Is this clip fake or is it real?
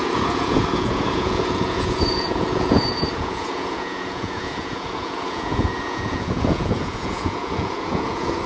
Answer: fake